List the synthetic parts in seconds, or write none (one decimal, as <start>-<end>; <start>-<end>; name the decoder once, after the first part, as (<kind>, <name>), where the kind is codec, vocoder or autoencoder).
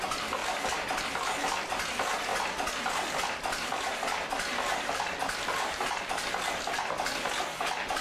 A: 2.3-6.3 (vocoder, BigVGAN v2)